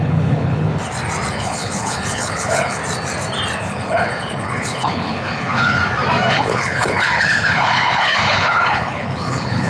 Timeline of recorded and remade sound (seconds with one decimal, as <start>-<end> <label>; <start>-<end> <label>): 0.0-0.7 remade; 0.7-1.3 recorded; 1.3-2.8 remade; 2.8-3.6 recorded; 3.6-5.8 remade; 5.8-6.3 recorded; 6.3-9.7 remade